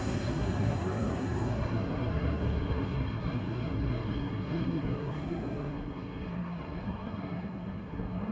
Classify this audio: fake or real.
fake